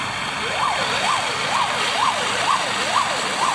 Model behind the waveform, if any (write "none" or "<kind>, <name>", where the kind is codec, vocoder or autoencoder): none